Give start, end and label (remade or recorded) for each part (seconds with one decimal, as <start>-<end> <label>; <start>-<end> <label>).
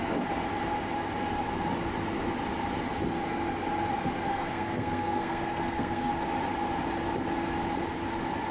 0.0-4.3 recorded; 4.3-6.1 remade; 6.1-8.5 recorded